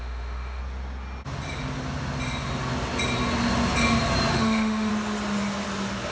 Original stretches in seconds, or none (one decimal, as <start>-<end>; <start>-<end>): 0.6-4.3; 4.9-6.1